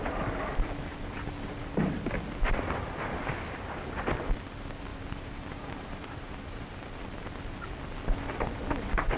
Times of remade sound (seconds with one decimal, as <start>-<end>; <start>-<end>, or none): 4.9-6.7